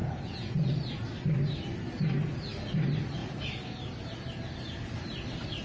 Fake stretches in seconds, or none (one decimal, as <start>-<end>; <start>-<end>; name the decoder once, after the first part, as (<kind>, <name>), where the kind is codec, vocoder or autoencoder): 0.0-0.7 (vocoder, Vocos)